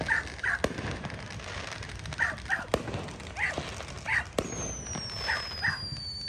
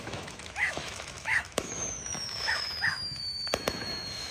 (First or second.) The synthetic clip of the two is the second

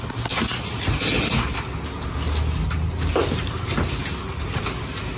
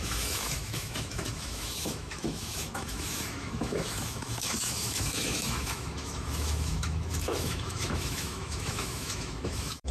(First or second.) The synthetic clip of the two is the second